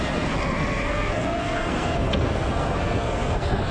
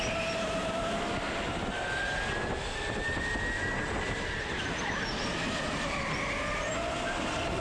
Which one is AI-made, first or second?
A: first